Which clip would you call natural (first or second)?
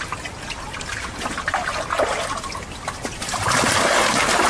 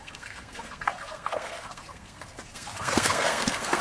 first